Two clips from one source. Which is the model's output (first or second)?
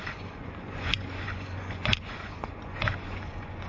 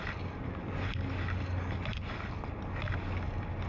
first